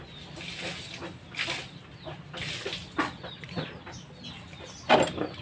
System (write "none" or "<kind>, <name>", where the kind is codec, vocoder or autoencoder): none